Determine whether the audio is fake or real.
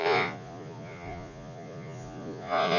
fake